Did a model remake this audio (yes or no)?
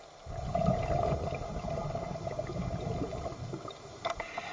no